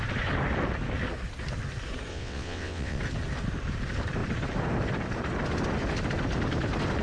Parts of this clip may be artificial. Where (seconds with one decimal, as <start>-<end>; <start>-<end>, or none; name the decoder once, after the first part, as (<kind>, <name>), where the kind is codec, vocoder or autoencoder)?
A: 2.1-3.0 (vocoder, WaveNeXt)